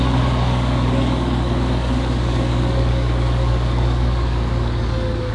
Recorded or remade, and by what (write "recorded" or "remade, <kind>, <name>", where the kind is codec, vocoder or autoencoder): remade, codec, DAC